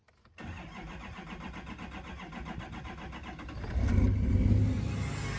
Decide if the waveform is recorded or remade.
recorded